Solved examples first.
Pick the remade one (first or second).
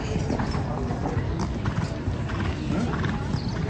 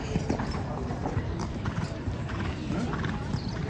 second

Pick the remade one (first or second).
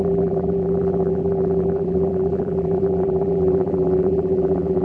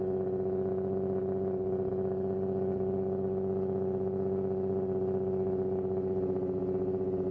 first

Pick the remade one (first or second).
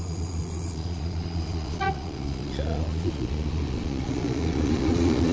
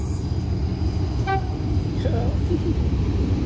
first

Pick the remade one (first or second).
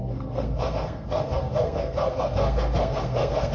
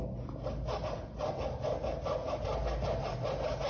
first